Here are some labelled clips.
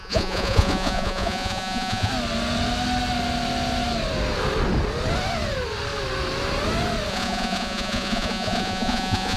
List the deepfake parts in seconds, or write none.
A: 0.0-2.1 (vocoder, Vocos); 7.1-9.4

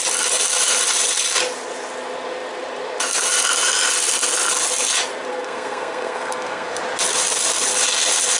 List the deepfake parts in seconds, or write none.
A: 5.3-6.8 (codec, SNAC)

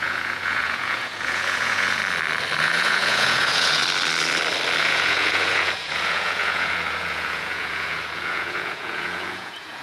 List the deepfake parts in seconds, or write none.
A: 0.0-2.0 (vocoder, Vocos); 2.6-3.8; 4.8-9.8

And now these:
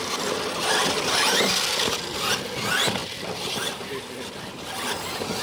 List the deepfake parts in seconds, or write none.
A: none

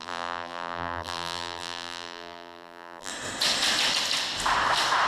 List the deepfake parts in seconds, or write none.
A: 0.0-3.1 (vocoder, BigVGAN v2)